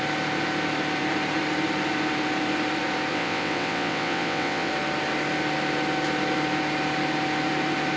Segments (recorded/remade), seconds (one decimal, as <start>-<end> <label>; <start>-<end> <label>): 0.0-3.1 recorded; 3.1-4.7 remade; 4.7-8.0 recorded